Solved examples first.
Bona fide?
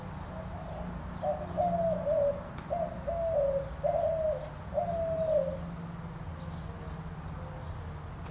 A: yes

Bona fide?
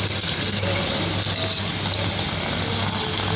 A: yes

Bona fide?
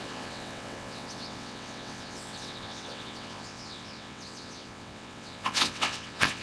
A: no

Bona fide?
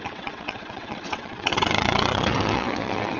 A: no